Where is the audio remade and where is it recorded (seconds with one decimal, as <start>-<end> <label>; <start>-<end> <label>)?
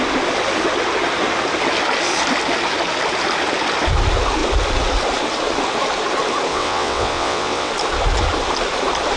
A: 0.0-6.5 recorded; 6.5-7.7 remade; 7.7-9.2 recorded